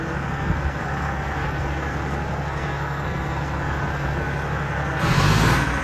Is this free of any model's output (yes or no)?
no